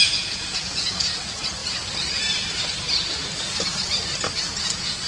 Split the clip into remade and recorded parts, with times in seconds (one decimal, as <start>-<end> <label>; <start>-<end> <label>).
0.0-1.6 remade; 1.6-4.6 recorded; 4.6-5.1 remade